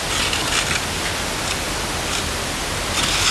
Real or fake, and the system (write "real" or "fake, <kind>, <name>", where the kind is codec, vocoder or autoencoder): real